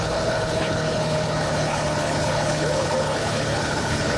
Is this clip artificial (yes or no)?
yes